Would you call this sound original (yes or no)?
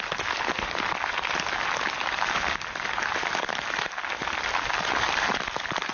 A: no